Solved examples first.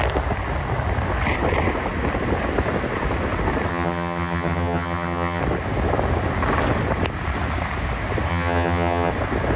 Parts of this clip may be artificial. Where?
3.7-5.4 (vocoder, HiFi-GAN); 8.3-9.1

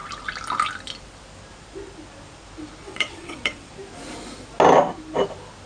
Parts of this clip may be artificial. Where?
2.8-3.7 (vocoder, WaveNeXt)

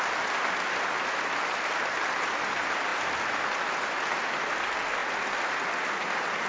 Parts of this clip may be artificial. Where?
none

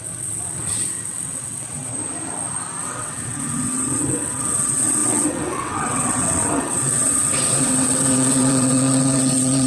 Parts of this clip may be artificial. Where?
0.0-1.9 (vocoder, WaveNeXt); 2.8-9.7

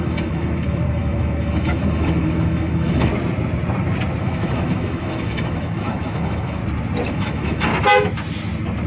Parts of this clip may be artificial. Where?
0.0-3.1 (autoencoder, DAC-VAE); 4.2-6.6; 7.1-7.7